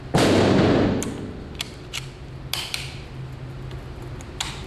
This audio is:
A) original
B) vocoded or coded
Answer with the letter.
A